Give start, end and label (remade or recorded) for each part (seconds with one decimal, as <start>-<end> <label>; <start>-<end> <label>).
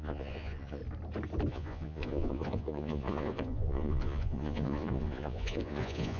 0.0-0.8 remade; 0.8-1.5 recorded; 1.5-6.2 remade